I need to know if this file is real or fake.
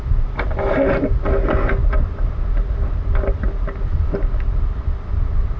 real